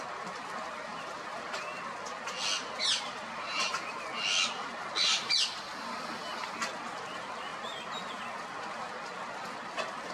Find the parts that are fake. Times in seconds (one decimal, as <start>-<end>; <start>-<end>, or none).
0.9-1.8; 2.8-4.0